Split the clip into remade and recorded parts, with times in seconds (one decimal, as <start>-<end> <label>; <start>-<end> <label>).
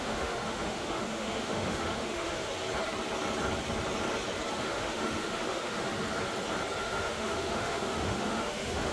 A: 0.0-2.5 remade; 2.5-4.6 recorded; 4.6-5.9 remade; 5.9-6.8 recorded; 6.8-8.9 remade